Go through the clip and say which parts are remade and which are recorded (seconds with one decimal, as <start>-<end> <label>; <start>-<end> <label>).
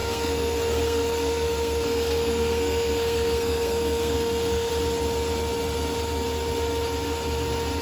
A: 0.0-4.7 remade; 4.7-7.8 recorded